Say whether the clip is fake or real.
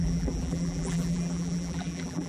fake